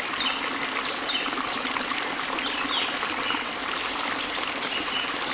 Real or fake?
real